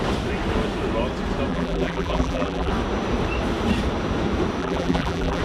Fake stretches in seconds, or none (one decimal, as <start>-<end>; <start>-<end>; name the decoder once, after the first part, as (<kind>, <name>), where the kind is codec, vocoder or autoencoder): 1.5-2.7 (vocoder, BigVGAN v2); 4.6-5.4

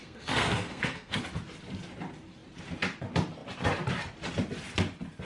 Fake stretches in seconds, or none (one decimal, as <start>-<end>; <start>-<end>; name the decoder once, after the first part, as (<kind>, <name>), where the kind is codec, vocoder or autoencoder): 0.0-1.2 (codec, SNAC)

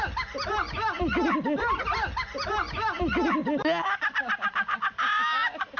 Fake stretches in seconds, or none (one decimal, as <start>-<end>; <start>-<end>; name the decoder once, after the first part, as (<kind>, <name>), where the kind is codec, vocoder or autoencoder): none

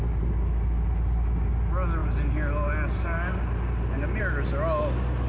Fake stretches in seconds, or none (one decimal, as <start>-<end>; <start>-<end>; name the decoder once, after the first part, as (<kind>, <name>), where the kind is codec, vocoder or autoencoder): none

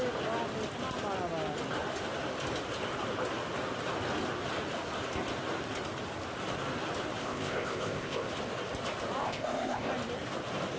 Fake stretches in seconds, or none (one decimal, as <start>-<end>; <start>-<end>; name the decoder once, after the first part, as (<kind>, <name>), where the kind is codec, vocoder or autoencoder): 7.2-8.3 (codec, ZipCodec); 9.2-9.9

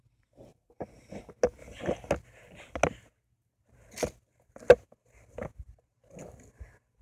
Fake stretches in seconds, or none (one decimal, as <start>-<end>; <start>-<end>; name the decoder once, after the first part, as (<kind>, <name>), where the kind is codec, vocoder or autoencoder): 0.5-1.2 (vocoder, BigVGAN v2); 1.6-2.1

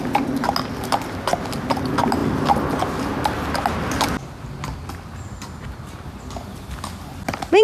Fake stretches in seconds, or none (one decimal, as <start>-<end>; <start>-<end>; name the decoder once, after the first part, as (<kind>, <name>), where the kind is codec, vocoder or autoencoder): none

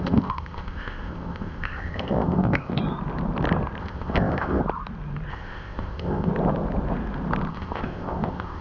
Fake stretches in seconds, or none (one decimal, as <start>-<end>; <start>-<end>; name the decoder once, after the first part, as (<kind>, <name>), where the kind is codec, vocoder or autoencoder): 0.0-2.8 (codec, ZipCodec); 3.8-4.6; 5.3-6.3; 7.5-8.6